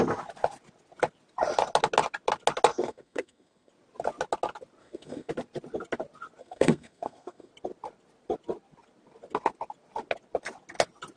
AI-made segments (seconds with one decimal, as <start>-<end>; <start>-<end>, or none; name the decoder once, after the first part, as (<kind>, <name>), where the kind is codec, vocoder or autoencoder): 2.7-3.7 (codec, SNAC); 4.8-5.3; 6.4-7.5